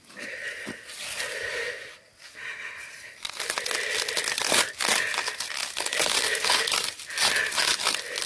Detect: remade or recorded recorded